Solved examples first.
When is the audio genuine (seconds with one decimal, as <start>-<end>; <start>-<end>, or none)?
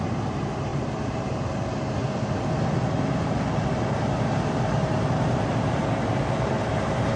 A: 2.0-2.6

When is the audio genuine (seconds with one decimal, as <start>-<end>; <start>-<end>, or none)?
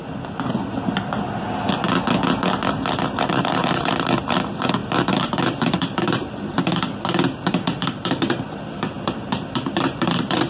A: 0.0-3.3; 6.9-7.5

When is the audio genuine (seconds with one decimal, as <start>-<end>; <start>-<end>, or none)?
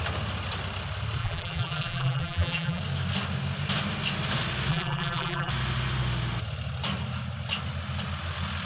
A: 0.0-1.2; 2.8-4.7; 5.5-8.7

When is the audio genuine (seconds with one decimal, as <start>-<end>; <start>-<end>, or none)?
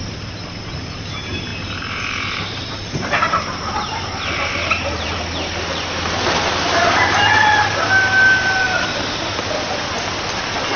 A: 0.0-1.5; 5.2-10.8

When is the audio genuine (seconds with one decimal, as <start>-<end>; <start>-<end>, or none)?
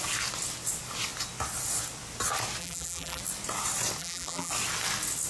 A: 0.0-2.6; 3.2-4.0; 4.5-5.3